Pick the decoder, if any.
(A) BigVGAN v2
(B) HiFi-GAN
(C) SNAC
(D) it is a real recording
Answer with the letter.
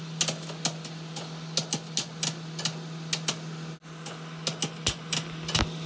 D